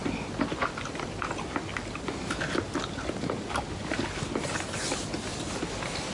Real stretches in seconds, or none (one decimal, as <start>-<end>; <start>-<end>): 0.0-6.1